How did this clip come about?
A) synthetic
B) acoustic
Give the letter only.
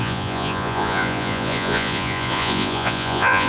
A